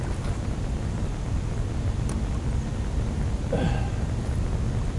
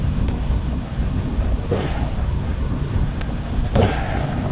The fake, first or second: second